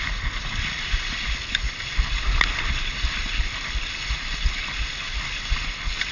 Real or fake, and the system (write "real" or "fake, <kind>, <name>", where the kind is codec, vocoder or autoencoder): real